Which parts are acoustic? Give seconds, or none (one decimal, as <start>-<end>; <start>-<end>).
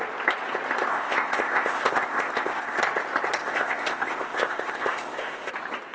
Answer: 0.0-0.9; 2.8-3.4; 5.5-5.9